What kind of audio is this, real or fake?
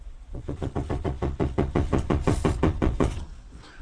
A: fake